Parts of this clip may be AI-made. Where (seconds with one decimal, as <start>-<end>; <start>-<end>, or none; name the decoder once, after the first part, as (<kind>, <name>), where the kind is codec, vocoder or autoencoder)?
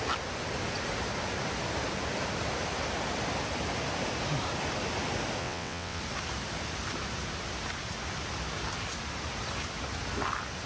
5.4-6.0 (vocoder, WaveNeXt)